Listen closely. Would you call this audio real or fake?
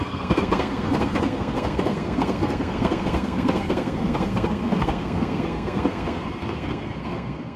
fake